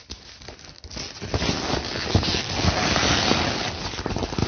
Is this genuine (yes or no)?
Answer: yes